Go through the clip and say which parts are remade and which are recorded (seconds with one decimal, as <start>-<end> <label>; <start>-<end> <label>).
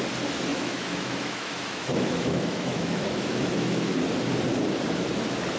0.0-0.5 recorded; 0.5-3.9 remade; 3.9-5.6 recorded